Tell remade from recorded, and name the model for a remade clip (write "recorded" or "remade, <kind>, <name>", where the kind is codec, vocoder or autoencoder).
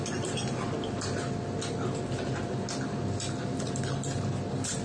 recorded